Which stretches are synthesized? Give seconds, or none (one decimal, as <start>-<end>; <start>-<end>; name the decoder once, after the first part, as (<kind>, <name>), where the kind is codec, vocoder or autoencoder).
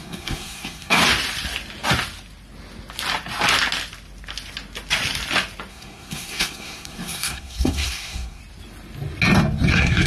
0.0-1.0 (codec, SNAC); 5.7-8.4; 9.7-10.1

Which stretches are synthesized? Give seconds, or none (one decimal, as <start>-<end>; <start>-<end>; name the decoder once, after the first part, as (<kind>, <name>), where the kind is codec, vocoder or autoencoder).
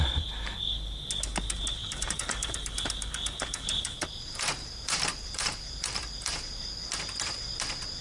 1.8-6.6 (vocoder, BigVGAN v2)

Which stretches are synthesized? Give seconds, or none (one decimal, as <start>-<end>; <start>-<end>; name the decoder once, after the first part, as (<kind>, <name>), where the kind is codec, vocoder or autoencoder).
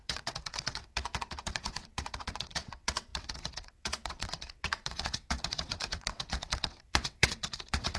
0.0-8.0 (vocoder, WaveNeXt)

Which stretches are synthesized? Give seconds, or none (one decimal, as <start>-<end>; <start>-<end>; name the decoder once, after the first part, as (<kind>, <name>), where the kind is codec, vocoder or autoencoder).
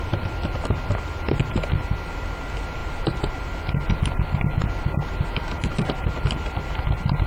2.8-5.9 (vocoder, BigVGAN v2)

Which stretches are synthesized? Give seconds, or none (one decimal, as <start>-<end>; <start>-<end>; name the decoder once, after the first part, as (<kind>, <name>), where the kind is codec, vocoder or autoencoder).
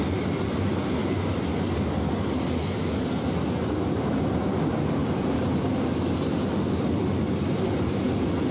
none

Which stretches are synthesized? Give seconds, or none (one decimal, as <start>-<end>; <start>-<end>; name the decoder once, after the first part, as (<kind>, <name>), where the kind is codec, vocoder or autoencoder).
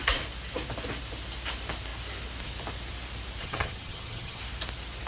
3.4-4.4 (vocoder, HiFi-GAN)